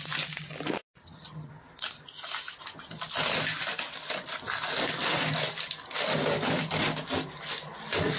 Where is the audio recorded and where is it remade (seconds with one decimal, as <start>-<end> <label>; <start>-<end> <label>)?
0.0-1.0 recorded; 1.0-1.5 remade; 1.5-8.2 recorded